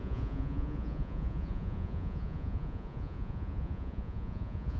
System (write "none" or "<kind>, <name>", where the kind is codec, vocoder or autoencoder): vocoder, Vocos